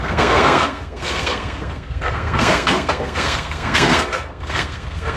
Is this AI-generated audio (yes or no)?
yes